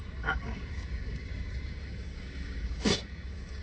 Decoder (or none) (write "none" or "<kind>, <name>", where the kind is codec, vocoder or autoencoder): codec, DAC